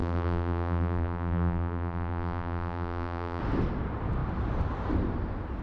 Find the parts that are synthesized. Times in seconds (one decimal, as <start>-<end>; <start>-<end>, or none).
0.0-3.4